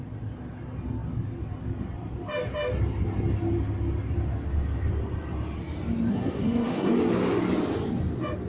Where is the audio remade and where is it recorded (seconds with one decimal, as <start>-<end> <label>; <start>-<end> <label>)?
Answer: 0.0-6.1 recorded; 6.1-6.9 remade; 6.9-8.5 recorded